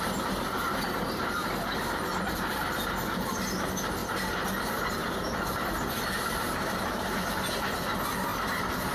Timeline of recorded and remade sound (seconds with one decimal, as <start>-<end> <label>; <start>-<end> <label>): 0.0-4.0 remade; 4.0-4.9 recorded; 4.9-8.9 remade